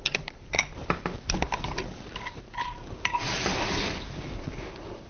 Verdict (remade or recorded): recorded